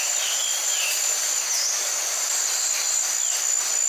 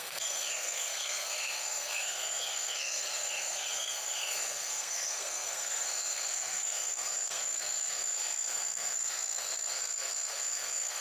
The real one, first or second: first